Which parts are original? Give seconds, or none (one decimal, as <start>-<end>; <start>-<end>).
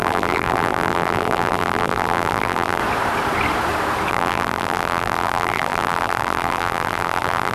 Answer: 2.8-4.1